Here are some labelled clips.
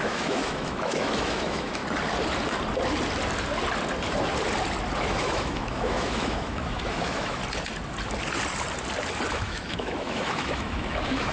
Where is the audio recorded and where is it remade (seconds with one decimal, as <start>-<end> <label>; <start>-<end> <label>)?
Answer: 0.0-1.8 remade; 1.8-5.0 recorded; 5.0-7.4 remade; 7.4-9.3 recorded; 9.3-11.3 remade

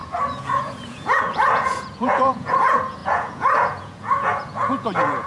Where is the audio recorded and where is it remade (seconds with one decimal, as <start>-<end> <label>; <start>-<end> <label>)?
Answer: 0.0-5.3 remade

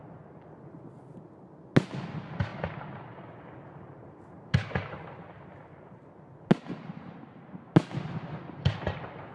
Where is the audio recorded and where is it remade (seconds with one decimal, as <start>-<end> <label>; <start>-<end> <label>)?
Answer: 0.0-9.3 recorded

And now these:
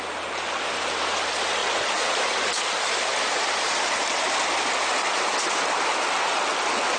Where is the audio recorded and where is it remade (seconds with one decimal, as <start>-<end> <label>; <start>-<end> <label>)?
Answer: 0.0-7.0 recorded

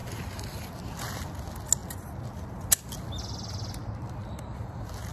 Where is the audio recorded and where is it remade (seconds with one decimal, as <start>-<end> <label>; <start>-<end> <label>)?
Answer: 0.0-5.1 recorded